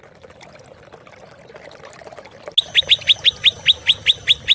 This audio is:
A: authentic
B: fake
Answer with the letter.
A